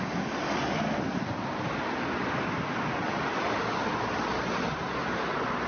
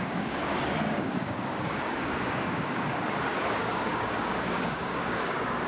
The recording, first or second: first